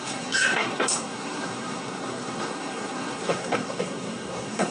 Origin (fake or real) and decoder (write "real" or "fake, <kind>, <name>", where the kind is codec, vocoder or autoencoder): fake, codec, SNAC